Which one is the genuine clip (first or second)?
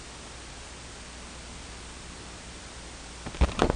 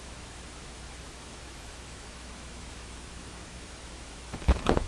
first